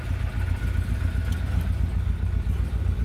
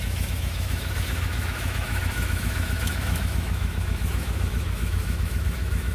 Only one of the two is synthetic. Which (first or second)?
second